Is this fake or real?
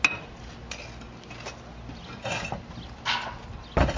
real